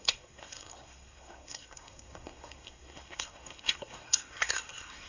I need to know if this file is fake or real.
fake